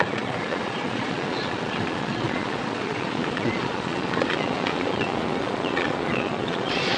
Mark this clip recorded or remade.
remade